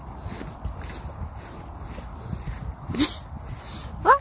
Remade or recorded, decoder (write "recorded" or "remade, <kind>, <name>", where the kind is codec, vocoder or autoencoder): recorded